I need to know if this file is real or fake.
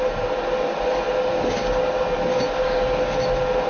real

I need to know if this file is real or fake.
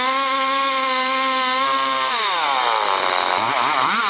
real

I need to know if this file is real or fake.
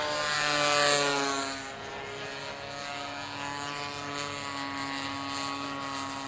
real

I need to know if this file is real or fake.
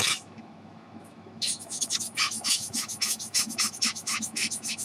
fake